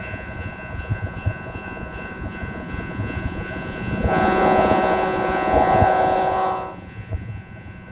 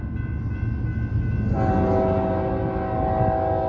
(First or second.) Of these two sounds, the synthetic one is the first